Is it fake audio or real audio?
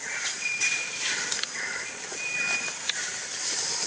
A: real